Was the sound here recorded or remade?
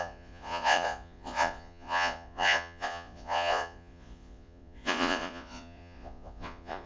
remade